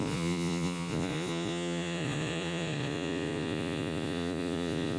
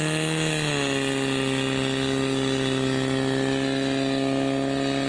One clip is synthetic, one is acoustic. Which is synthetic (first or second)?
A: first